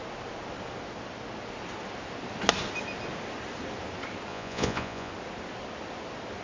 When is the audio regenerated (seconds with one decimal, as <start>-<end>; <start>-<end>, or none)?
4.3-5.1